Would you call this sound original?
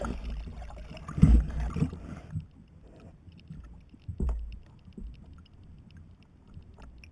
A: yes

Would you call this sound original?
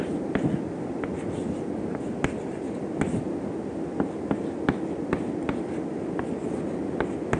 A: yes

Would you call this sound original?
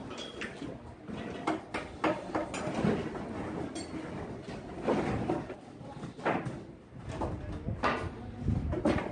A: yes